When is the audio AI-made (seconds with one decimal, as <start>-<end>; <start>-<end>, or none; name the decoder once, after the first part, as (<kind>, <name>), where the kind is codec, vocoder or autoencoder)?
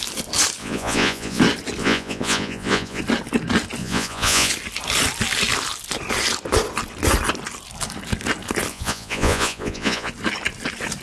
0.6-1.4 (vocoder, Vocos); 1.8-3.0; 3.8-4.5; 8.7-10.1